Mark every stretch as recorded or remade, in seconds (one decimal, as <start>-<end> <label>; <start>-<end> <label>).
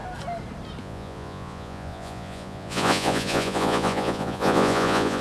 0.0-0.8 recorded; 0.8-5.2 remade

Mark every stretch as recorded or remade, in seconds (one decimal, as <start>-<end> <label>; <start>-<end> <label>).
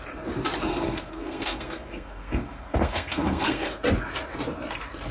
0.0-0.7 recorded; 0.7-3.8 remade; 3.8-5.1 recorded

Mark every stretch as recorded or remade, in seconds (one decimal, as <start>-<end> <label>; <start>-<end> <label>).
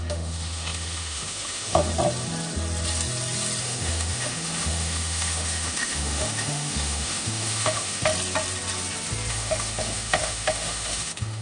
0.0-1.9 remade; 1.9-3.6 recorded; 3.6-8.1 remade; 8.1-9.3 recorded; 9.3-11.4 remade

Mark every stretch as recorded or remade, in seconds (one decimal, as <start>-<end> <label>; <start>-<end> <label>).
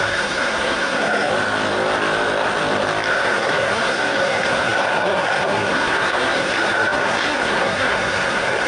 0.0-1.3 remade; 1.3-3.1 recorded; 3.1-8.7 remade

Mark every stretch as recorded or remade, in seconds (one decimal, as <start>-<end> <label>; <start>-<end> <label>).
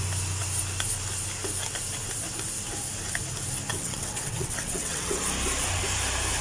0.0-3.7 recorded; 3.7-5.2 remade; 5.2-6.4 recorded